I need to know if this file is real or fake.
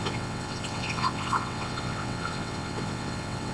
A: fake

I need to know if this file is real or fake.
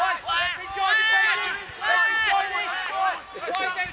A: real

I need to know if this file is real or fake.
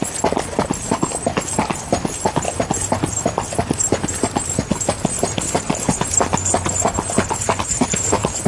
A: real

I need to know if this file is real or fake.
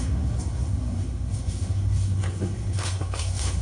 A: fake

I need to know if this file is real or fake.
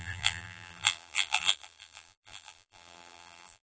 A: fake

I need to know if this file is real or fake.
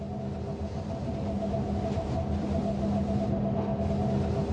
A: real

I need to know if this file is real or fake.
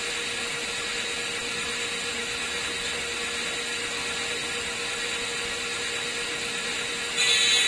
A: real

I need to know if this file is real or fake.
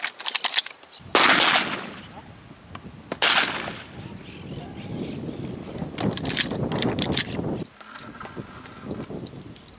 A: real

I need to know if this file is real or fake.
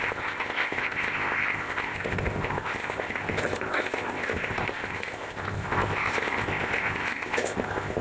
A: fake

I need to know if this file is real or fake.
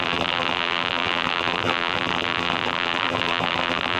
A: fake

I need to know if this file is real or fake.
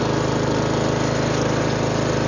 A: real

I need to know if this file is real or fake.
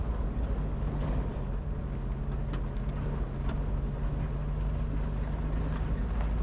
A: real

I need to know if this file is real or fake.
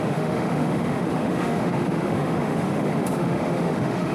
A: fake